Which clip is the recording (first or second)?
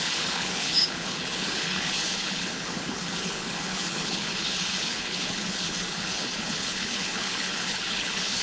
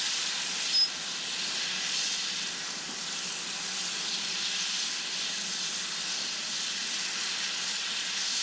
second